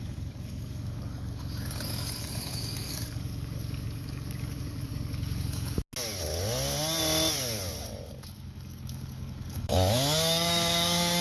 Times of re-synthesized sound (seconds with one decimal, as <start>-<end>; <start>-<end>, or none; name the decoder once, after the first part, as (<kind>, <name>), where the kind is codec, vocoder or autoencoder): 0.0-5.8 (codec, DAC); 8.1-11.2